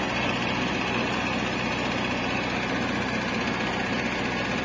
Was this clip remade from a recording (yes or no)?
no